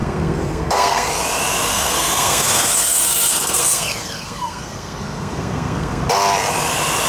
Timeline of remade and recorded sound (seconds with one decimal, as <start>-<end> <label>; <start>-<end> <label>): 0.0-1.1 remade; 1.1-1.7 recorded; 1.7-6.0 remade; 6.0-7.1 recorded